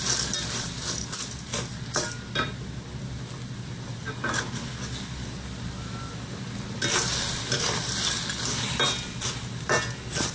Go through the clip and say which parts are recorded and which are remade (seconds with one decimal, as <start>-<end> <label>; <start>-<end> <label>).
0.0-10.3 recorded